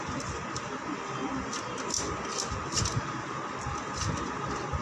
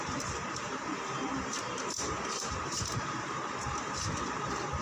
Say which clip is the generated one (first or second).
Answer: second